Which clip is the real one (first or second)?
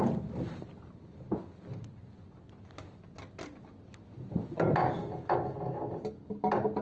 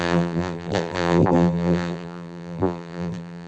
first